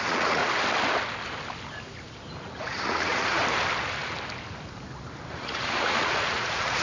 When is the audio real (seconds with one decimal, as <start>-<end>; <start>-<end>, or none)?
0.4-2.4; 3.4-5.3